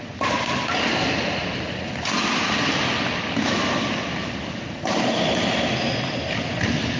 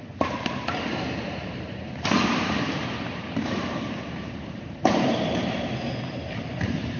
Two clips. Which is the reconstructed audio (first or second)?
second